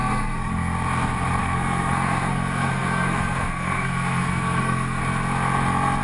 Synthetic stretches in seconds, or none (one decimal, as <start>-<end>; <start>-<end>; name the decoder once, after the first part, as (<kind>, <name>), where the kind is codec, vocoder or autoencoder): 0.0-0.5 (codec, SNAC); 1.4-5.0